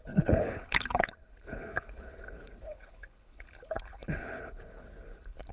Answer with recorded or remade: remade